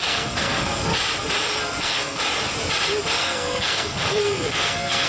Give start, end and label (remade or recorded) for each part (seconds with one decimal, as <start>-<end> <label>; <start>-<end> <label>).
0.0-0.9 remade; 0.9-1.8 recorded; 1.8-2.2 remade; 2.2-3.2 recorded; 3.2-5.1 remade